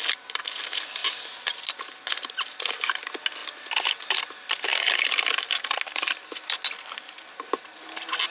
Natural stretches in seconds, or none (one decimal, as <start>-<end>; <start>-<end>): 0.0-8.3